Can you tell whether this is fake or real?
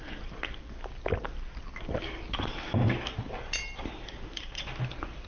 real